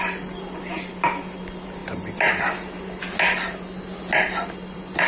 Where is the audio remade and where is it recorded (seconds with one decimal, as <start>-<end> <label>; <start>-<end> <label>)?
0.0-5.1 recorded